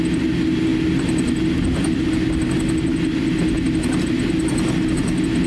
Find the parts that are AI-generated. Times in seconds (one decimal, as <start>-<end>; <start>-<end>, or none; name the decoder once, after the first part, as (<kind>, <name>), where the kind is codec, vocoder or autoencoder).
none

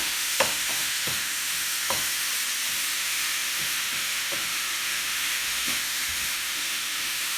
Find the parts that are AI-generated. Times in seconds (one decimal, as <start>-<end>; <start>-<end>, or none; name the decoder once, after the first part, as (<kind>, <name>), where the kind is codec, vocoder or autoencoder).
0.0-2.3 (autoencoder, DAC-VAE); 2.8-7.4

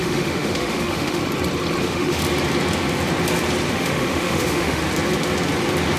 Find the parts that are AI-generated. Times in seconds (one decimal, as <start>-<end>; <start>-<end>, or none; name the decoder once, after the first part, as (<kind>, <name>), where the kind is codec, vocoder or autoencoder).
0.0-1.2 (autoencoder, DAC-VAE); 1.8-2.2; 3.7-4.8

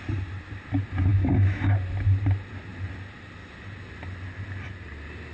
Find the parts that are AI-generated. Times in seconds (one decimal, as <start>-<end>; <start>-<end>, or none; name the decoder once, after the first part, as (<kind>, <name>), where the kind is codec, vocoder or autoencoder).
1.1-1.7 (autoencoder, DAC-VAE)

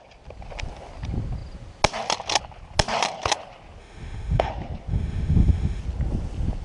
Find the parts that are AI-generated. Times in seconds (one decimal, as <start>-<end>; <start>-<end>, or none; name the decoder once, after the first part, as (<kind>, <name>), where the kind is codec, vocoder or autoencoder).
3.8-4.5 (autoencoder, DAC-VAE); 4.9-5.8

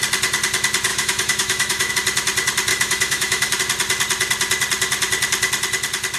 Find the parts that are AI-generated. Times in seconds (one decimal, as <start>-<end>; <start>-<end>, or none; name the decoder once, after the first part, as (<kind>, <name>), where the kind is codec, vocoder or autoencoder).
0.9-1.9 (autoencoder, DAC-VAE); 2.7-3.6

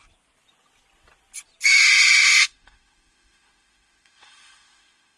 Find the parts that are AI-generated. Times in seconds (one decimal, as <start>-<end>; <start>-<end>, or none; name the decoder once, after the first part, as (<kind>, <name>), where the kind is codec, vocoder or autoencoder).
2.2-5.2 (autoencoder, DAC-VAE)